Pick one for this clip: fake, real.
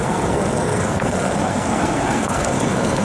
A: fake